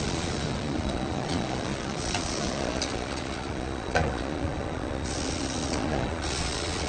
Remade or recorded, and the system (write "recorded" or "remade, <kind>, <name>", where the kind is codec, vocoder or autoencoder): remade, vocoder, Vocos